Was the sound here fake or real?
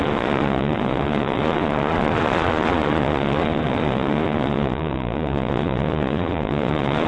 fake